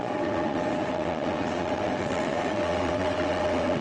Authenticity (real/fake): fake